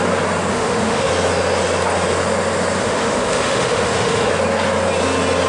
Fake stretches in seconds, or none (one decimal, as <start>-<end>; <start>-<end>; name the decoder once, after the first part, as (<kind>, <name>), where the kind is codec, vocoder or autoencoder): 0.5-1.1 (autoencoder, DAC-VAE); 2.8-4.3